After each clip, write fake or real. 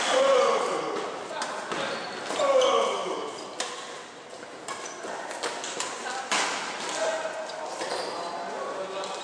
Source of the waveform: real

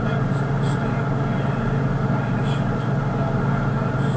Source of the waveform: real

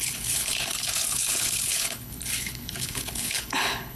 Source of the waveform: fake